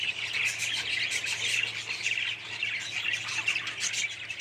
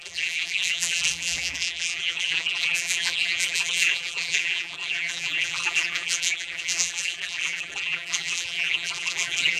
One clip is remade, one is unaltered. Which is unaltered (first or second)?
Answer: first